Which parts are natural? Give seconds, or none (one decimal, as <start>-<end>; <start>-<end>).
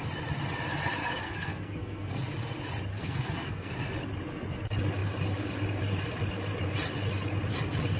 0.0-1.0; 2.1-2.9; 3.7-8.0